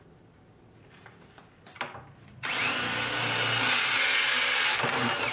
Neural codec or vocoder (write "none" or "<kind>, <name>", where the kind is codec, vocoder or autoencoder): none